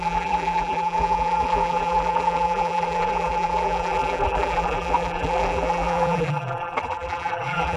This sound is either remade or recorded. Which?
remade